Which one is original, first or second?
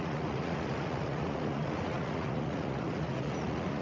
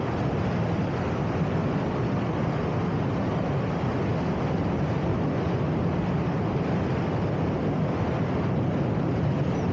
second